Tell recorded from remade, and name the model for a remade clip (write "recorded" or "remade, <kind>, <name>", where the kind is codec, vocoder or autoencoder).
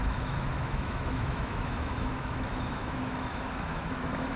remade, autoencoder, DAC-VAE